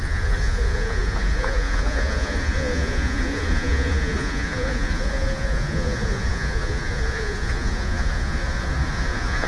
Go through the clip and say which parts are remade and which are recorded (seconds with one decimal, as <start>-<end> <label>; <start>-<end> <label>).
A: 0.0-9.5 remade

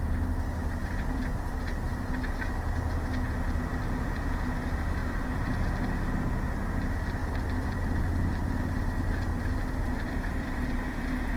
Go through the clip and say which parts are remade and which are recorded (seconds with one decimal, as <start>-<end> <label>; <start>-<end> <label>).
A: 0.0-0.8 recorded; 0.8-2.1 remade; 2.1-5.0 recorded; 5.0-5.7 remade; 5.7-7.2 recorded; 7.2-8.0 remade; 8.0-9.3 recorded; 9.3-10.7 remade; 10.7-11.4 recorded

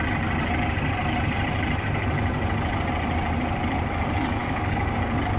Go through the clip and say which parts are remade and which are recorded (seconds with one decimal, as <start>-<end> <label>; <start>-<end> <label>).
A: 0.0-4.4 recorded; 4.4-5.0 remade; 5.0-5.4 recorded

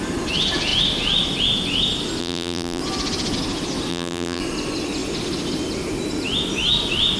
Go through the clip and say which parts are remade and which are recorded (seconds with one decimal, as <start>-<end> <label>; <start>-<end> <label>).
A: 0.0-2.2 recorded; 2.2-2.8 remade; 2.8-3.9 recorded; 3.9-4.4 remade; 4.4-7.2 recorded

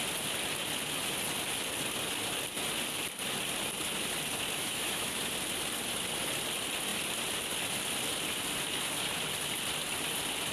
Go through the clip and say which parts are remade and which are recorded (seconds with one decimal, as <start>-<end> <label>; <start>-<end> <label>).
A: 0.0-4.6 recorded; 4.6-5.2 remade; 5.2-10.5 recorded

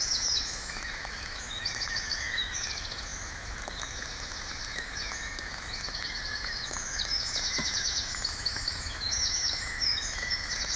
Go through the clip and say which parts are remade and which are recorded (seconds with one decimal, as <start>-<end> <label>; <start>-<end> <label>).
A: 0.0-10.8 remade

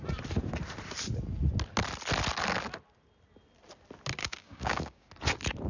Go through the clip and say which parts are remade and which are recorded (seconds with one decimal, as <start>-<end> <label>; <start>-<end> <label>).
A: 0.0-4.2 recorded; 4.2-5.1 remade; 5.1-5.7 recorded